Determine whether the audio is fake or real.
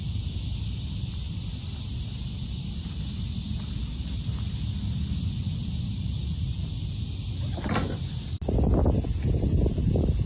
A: real